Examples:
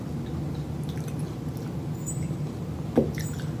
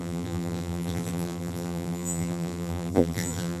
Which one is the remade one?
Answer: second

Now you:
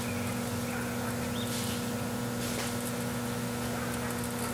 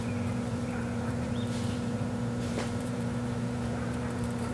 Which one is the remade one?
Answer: second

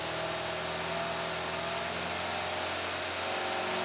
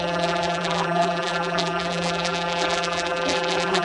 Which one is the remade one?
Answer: second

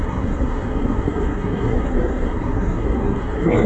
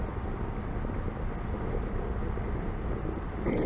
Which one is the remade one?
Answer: first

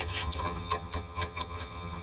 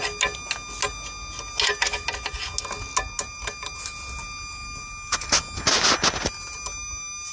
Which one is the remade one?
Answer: first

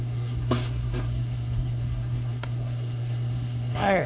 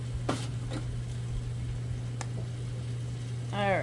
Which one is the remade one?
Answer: first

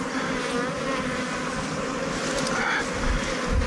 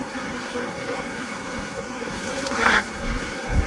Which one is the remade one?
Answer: second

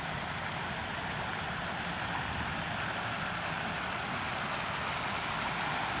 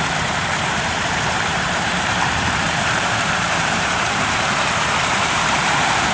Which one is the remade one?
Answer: second